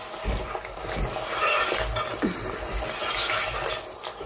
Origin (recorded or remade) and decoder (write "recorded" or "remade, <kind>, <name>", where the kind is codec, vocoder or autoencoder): recorded